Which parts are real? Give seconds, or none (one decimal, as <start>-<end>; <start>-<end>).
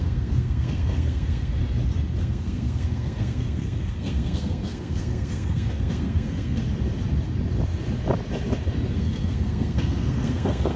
1.6-2.2; 6.6-8.9